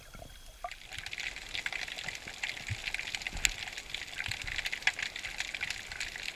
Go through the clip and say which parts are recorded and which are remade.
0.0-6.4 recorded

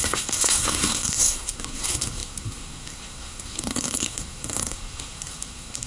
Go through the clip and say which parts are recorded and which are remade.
0.0-5.9 remade